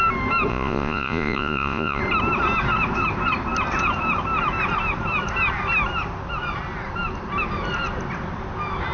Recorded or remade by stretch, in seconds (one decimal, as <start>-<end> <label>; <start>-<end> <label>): 0.0-0.5 recorded; 0.5-2.0 remade; 2.0-8.9 recorded